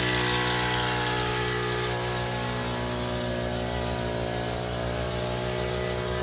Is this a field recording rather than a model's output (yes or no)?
yes